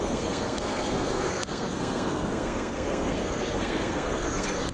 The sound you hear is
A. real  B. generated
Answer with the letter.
B